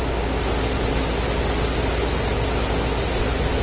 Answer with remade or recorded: recorded